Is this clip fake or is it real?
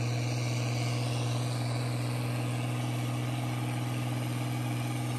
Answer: real